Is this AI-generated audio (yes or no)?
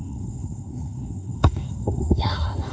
yes